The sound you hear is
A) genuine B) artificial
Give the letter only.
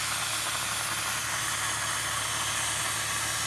A